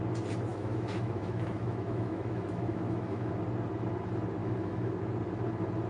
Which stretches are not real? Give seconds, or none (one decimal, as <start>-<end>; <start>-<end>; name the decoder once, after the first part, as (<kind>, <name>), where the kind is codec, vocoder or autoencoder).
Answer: 0.5-3.3 (autoencoder, DAC-VAE); 4.4-4.9